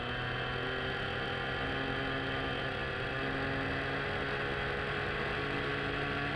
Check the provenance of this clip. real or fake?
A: real